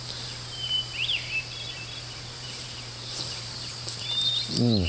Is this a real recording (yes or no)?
no